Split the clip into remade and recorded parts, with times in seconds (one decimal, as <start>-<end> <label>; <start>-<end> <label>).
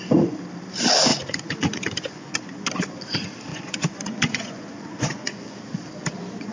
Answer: 0.0-1.1 recorded; 1.1-2.4 remade; 2.4-3.5 recorded; 3.5-5.6 remade; 5.6-6.5 recorded